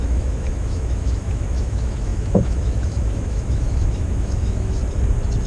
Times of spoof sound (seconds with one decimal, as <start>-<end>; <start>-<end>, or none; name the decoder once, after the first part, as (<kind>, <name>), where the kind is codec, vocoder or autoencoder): 0.0-4.8 (autoencoder, DAC-VAE)